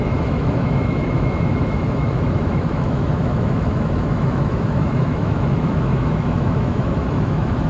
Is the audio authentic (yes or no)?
no